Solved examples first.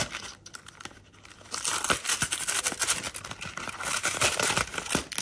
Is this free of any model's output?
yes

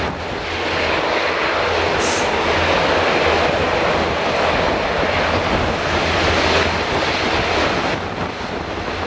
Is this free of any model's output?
yes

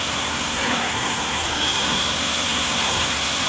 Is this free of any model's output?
no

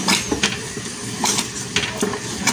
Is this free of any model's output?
yes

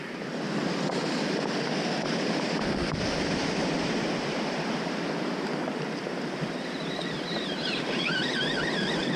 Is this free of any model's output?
no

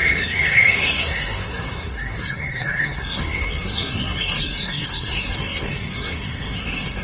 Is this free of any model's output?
no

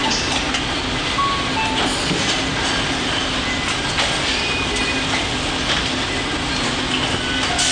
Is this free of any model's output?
yes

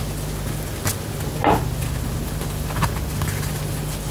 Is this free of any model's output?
yes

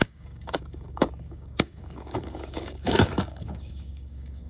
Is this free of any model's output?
no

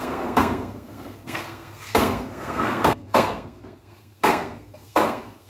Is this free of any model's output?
no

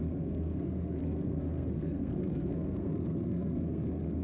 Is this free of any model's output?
no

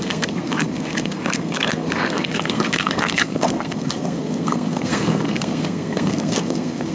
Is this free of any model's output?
no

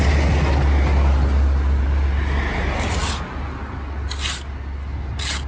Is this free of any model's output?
yes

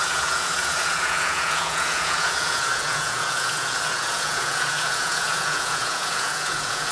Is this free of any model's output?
no